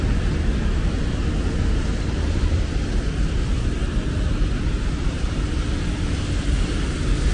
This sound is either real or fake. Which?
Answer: real